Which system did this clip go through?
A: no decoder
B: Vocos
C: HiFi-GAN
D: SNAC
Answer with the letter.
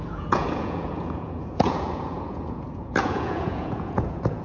B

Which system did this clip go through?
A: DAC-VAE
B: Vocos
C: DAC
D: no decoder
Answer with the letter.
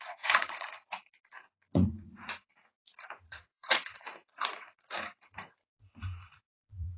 B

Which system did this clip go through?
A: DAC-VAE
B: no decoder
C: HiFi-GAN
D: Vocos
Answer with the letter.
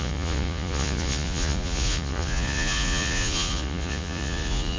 D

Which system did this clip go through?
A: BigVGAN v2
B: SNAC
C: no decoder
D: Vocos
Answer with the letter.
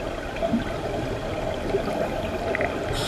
C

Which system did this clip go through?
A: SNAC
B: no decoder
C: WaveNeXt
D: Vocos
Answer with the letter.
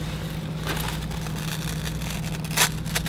B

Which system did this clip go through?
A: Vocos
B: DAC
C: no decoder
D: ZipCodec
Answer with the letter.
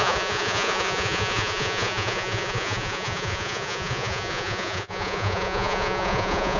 A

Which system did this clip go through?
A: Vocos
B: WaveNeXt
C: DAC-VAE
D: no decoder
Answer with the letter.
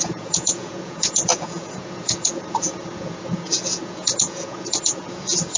A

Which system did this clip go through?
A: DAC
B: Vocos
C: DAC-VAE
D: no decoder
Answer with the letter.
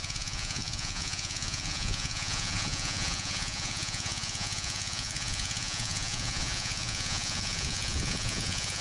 B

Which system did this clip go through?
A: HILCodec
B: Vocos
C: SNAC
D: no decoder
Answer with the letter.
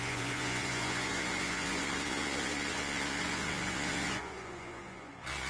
B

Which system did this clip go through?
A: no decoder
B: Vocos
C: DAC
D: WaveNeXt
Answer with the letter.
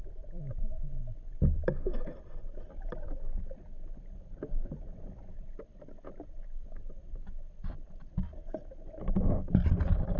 A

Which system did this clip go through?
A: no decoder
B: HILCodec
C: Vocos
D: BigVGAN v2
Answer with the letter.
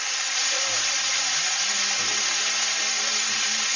A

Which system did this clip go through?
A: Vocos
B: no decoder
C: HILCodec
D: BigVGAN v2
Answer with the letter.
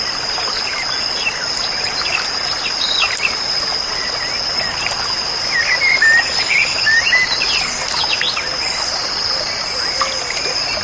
B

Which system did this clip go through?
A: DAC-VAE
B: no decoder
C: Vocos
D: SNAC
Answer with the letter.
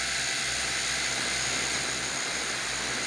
B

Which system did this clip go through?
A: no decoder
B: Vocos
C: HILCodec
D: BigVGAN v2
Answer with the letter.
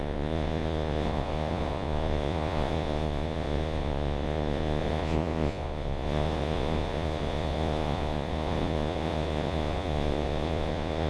B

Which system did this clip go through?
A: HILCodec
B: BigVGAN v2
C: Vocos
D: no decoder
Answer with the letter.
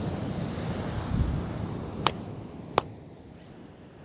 D